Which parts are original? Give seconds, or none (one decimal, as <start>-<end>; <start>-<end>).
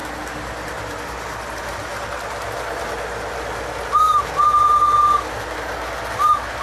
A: 0.0-6.6